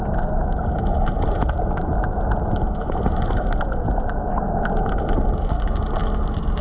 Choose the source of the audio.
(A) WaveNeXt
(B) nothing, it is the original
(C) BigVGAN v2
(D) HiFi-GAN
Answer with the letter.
B